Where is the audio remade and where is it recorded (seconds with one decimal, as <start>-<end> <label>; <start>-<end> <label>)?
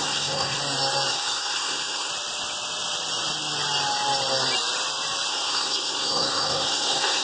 0.0-0.6 remade; 0.6-1.1 recorded; 1.1-2.1 remade; 2.1-5.3 recorded; 5.3-7.2 remade